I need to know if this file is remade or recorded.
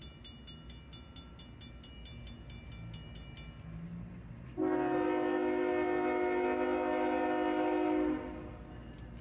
recorded